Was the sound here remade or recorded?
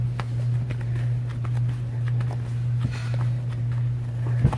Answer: recorded